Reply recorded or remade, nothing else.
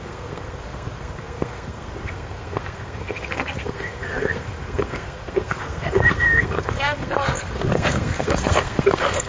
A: remade